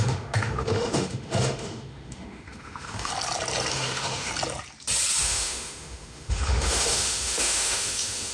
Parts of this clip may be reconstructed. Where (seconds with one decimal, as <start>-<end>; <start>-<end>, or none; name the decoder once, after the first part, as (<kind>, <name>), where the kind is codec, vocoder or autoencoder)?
0.0-3.1 (autoencoder, DAC-VAE); 3.7-4.3; 5.2-8.3